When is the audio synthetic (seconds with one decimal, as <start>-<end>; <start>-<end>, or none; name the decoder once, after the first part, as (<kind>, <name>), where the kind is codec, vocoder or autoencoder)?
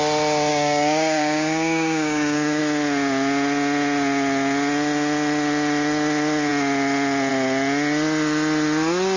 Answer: 0.5-2.6 (codec, DAC)